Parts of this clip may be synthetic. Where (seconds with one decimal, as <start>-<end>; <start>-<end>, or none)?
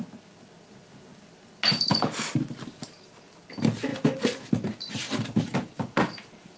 none